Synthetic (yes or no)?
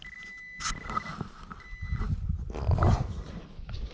no